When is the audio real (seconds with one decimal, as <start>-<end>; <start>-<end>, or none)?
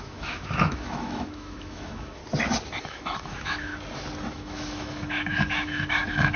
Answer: 2.2-2.8; 3.7-4.3